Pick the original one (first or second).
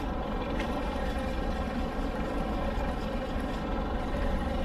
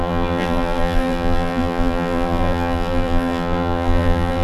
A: first